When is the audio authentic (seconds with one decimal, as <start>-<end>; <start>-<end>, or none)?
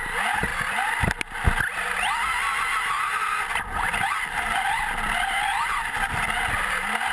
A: 0.0-7.1